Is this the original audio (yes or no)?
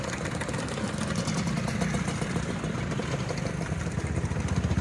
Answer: yes